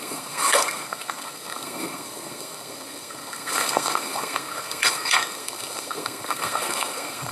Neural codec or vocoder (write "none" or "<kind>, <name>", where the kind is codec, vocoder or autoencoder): codec, SNAC